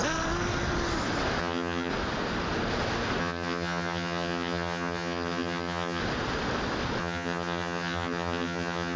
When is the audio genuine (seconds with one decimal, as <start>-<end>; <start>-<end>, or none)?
0.0-1.4; 1.9-3.2; 6.0-7.0